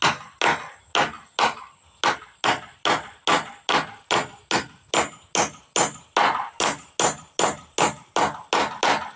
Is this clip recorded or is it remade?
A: recorded